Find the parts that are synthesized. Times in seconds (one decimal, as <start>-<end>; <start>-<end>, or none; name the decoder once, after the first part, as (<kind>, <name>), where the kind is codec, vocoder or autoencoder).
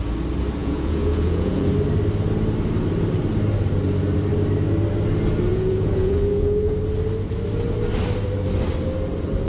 0.6-1.7 (vocoder, Vocos); 5.5-6.8